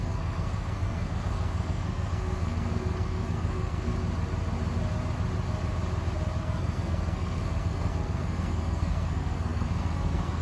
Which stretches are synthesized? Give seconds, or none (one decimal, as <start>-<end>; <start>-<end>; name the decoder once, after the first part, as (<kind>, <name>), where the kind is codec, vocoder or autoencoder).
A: 0.0-3.9 (codec, SNAC); 6.4-10.4